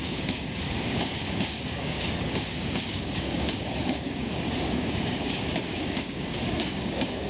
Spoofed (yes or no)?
yes